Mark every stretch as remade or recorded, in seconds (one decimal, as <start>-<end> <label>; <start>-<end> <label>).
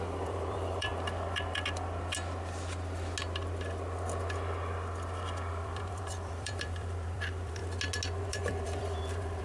0.0-0.9 remade; 0.9-5.5 recorded; 5.5-7.6 remade; 7.6-8.2 recorded; 8.2-9.4 remade